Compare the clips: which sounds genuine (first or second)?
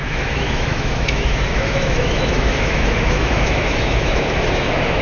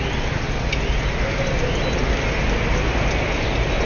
second